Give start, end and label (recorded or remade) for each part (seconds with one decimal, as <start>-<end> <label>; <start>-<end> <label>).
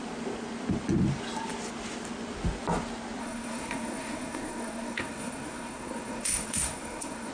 0.0-3.2 recorded; 3.2-7.3 remade